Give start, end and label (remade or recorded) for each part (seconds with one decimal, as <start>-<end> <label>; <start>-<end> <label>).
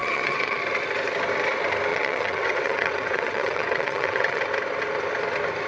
0.0-0.6 remade; 0.6-1.9 recorded; 1.9-4.4 remade; 4.4-5.7 recorded